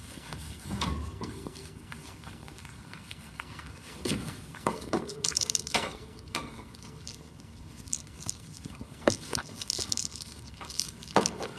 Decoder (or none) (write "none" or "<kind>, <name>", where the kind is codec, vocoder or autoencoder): codec, SNAC